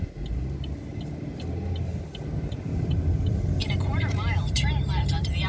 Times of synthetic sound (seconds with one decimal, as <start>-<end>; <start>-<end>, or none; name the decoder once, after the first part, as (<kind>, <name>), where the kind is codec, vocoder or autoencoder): none